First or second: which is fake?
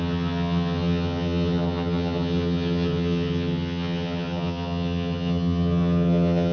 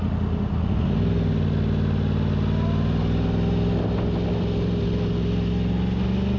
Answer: first